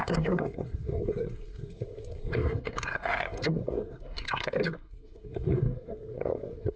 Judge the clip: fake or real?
fake